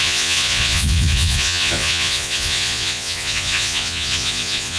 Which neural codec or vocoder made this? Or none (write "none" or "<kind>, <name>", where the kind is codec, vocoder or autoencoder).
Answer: vocoder, Vocos